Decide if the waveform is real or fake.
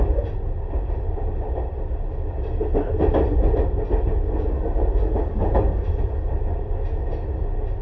real